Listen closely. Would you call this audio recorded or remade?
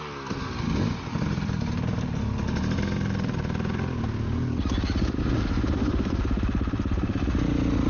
recorded